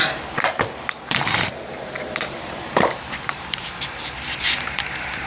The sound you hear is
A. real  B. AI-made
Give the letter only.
B